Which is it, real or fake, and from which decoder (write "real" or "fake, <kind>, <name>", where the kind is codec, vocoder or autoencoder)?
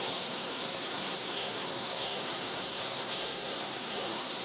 fake, codec, SNAC